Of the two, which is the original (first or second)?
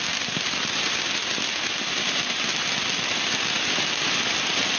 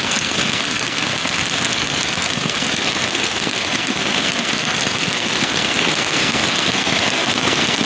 first